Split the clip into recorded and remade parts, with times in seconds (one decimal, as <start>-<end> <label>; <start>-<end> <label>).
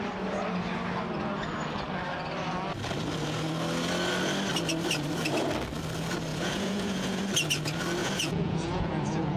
0.0-6.3 recorded; 6.3-7.2 remade; 7.2-8.0 recorded; 8.0-9.4 remade